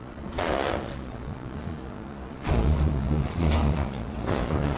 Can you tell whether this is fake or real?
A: fake